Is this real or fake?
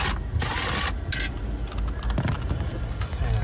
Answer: real